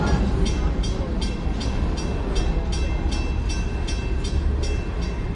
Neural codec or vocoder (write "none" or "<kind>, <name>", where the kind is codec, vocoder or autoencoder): none